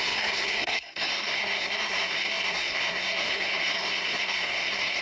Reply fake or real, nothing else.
fake